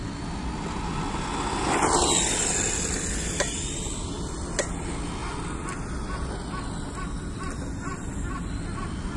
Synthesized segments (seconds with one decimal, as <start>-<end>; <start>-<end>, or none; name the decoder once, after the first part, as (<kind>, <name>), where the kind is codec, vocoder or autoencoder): none